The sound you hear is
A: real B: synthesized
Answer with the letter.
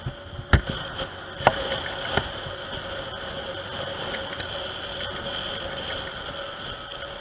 A